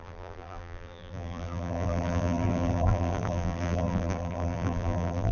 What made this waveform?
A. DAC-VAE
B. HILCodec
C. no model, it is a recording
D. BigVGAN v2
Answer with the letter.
D